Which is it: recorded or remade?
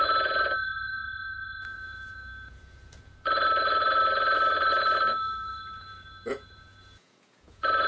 remade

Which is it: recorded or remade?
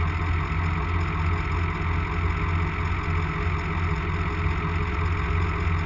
recorded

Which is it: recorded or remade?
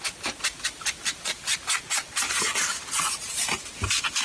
recorded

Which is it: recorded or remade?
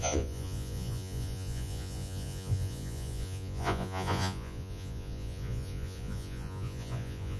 remade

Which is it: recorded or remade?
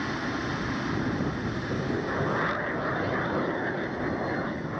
recorded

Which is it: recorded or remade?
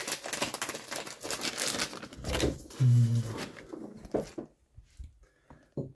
recorded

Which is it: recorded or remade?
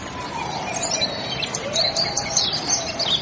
recorded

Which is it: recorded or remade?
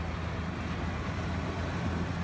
recorded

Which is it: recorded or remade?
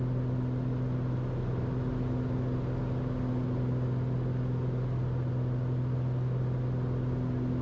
recorded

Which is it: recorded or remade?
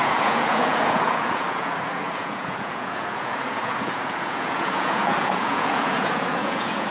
remade